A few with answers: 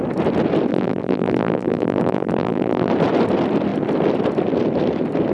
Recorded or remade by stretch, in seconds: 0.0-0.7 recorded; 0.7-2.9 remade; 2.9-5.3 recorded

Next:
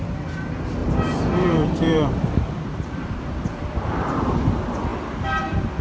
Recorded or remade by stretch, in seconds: 0.0-0.8 recorded; 0.8-4.2 remade; 4.2-5.8 recorded